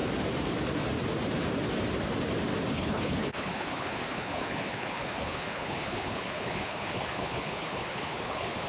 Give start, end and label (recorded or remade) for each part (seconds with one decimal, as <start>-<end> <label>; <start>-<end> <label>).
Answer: 0.0-2.7 recorded; 2.7-8.7 remade